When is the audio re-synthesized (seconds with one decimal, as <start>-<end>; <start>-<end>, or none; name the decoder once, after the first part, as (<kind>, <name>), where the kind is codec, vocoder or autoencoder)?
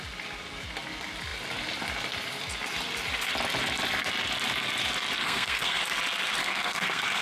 5.2-5.8 (codec, SNAC); 6.4-7.2